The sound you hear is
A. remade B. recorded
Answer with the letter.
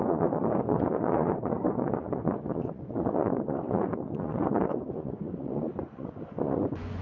A